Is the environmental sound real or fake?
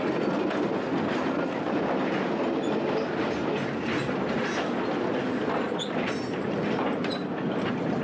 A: real